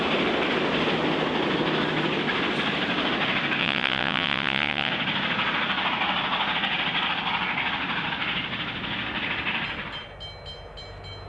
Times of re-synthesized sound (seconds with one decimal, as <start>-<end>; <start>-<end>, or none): 3.6-4.9